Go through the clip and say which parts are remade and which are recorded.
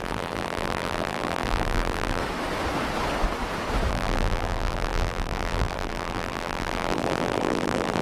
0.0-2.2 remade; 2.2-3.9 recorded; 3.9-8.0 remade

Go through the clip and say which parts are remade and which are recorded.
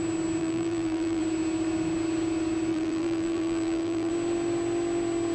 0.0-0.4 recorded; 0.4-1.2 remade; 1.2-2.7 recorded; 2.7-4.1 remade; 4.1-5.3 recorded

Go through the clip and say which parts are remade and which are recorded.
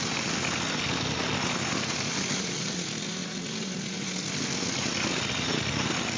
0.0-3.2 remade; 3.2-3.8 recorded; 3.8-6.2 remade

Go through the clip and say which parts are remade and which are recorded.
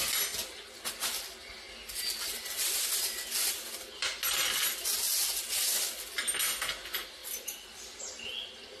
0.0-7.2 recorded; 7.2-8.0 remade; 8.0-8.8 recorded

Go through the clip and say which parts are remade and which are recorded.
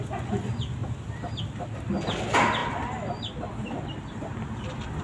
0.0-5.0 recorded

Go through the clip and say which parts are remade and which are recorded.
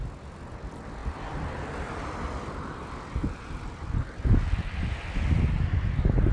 0.0-1.0 recorded; 1.0-4.8 remade; 4.8-6.3 recorded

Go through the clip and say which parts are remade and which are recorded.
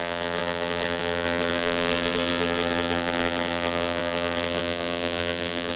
0.0-5.8 remade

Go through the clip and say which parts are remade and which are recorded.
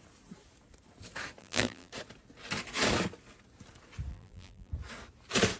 0.0-1.4 recorded; 1.4-1.9 remade; 1.9-4.1 recorded; 4.1-4.7 remade; 4.7-5.6 recorded